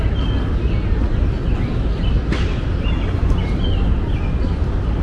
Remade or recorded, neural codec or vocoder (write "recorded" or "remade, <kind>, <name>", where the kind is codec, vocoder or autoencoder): recorded